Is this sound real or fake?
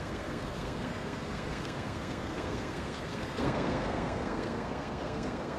fake